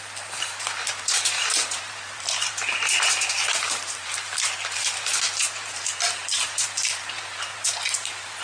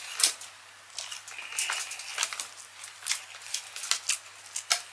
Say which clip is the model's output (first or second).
first